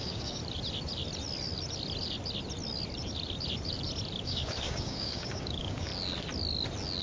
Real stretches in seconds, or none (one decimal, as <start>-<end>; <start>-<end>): 0.4-4.2; 5.9-7.0